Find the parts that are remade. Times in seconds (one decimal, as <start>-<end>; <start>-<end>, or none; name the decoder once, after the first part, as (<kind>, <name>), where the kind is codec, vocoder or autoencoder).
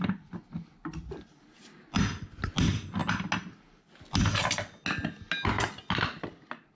none